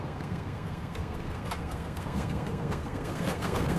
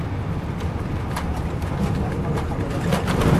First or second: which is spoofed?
first